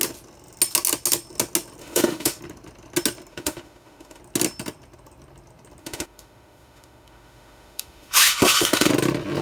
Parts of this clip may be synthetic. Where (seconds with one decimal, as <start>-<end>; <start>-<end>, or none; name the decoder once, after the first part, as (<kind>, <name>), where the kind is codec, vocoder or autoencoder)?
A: 1.8-2.4 (autoencoder, DAC-VAE); 3.3-4.2; 5.8-8.9